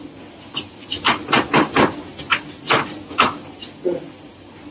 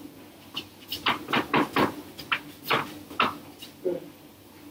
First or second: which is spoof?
first